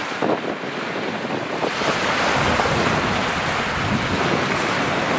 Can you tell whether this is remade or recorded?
recorded